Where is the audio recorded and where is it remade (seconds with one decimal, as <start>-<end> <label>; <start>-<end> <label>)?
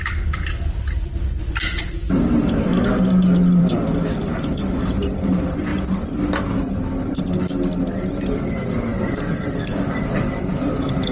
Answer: 0.0-2.7 remade; 2.7-3.6 recorded; 3.6-5.7 remade; 5.7-9.0 recorded; 9.0-11.1 remade